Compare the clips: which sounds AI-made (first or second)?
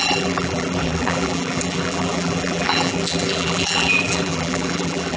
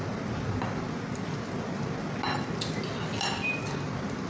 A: first